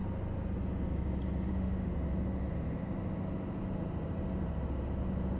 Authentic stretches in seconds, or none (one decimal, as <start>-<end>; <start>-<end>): 0.0-1.5; 1.9-5.4